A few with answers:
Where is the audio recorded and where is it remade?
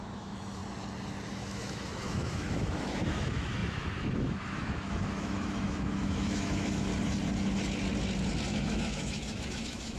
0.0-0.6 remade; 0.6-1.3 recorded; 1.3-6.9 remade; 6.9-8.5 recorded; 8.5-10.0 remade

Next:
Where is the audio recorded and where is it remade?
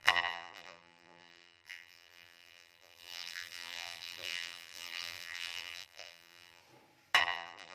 0.0-6.6 remade; 6.6-7.2 recorded; 7.2-7.7 remade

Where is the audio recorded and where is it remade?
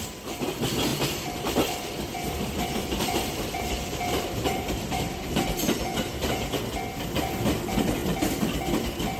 0.0-0.9 recorded; 0.9-1.5 remade; 1.5-2.8 recorded; 2.8-6.5 remade; 6.5-8.0 recorded; 8.0-8.6 remade; 8.6-9.2 recorded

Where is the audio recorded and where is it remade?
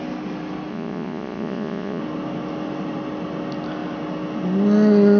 0.0-0.7 recorded; 0.7-2.0 remade; 2.0-5.2 recorded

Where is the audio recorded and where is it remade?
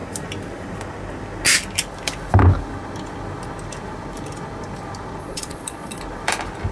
0.0-5.2 recorded; 5.2-6.0 remade; 6.0-6.7 recorded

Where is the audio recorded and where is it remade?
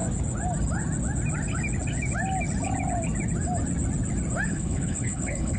0.0-4.5 recorded; 4.5-5.6 remade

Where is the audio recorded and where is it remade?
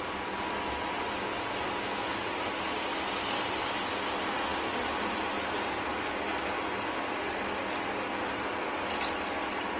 0.0-9.8 recorded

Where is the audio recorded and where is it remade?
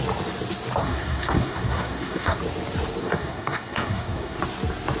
0.0-0.8 recorded; 0.8-2.4 remade; 2.4-3.0 recorded; 3.0-4.4 remade; 4.4-5.0 recorded